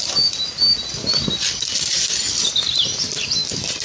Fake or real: real